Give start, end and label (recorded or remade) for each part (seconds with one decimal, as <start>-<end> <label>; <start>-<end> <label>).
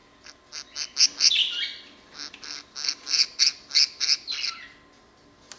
0.0-5.6 recorded